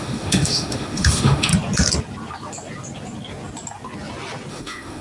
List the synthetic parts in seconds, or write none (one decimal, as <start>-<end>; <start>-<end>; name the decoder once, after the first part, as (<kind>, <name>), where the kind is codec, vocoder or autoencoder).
0.0-1.5 (autoencoder, DAC-VAE); 4.5-5.0